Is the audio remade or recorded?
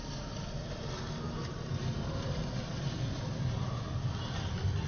recorded